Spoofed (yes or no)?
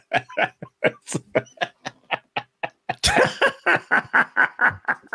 no